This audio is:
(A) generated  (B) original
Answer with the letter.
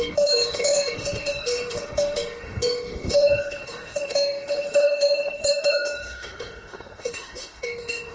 A